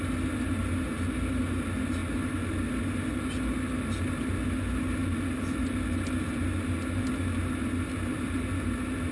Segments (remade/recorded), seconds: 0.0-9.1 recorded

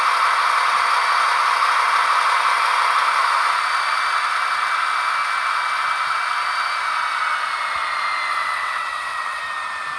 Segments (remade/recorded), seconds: 0.0-8.3 recorded; 8.3-9.4 remade; 9.4-10.0 recorded

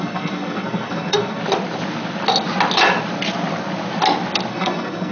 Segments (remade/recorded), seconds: 0.0-1.4 remade; 1.4-4.5 recorded; 4.5-5.1 remade